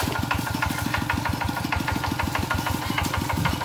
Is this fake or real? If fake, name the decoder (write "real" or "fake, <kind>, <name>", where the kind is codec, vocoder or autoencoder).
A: real